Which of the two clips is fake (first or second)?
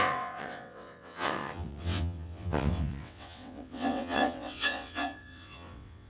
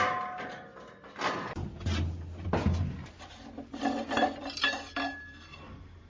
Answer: first